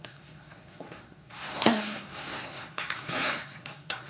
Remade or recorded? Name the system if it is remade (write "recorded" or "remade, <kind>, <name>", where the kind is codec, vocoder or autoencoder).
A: remade, codec, SNAC